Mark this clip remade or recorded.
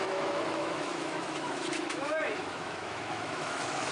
remade